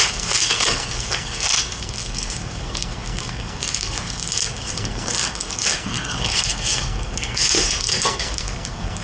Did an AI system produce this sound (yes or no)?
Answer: yes